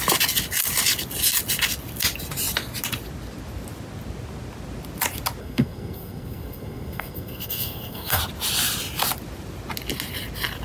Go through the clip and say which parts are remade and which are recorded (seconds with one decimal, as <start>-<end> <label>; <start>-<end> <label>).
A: 0.0-5.4 recorded; 5.4-8.2 remade; 8.2-10.6 recorded